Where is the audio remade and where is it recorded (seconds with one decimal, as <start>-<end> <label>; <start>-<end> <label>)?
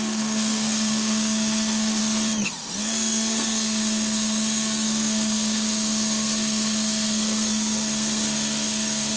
0.0-2.0 remade; 2.0-2.8 recorded; 2.8-9.2 remade